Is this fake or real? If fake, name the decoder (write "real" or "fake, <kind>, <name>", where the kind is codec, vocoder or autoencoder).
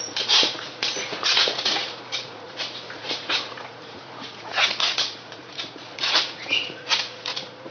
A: fake, vocoder, Vocos